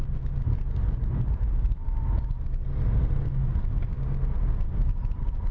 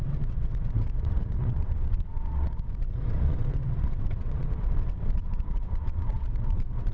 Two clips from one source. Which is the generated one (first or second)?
second